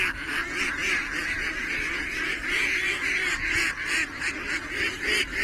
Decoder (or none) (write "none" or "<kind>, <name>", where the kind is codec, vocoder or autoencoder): none